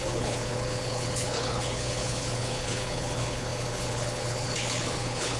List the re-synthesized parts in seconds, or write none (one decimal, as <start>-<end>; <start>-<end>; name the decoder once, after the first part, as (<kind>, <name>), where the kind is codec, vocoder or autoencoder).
0.0-5.4 (codec, HILCodec)